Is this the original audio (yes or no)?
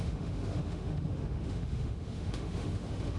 no